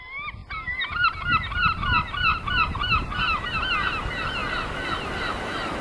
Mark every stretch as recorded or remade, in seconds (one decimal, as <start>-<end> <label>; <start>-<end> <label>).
0.0-5.8 recorded